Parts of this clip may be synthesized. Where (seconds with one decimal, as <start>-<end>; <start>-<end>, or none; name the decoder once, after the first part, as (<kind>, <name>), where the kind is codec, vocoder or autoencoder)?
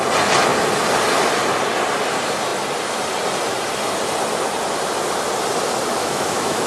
6.0-6.7 (autoencoder, DAC-VAE)